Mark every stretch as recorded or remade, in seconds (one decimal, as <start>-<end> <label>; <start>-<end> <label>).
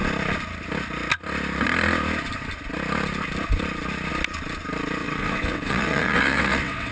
0.0-5.0 recorded; 5.0-6.9 remade